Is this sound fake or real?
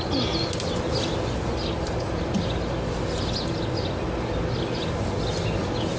real